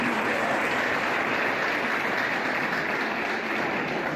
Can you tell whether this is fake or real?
real